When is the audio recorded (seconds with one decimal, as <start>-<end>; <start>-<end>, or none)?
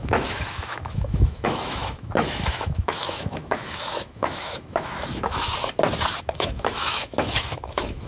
5.5-6.2